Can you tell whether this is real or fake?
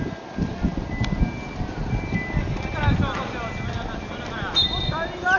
real